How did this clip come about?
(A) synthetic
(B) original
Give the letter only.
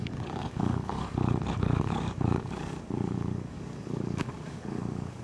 A